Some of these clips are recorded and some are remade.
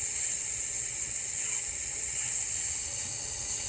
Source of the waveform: remade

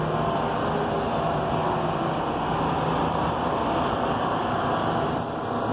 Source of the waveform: recorded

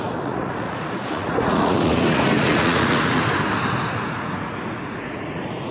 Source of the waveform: remade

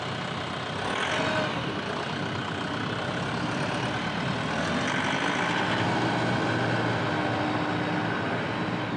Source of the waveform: recorded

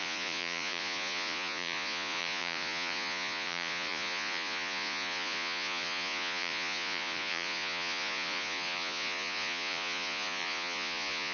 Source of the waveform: remade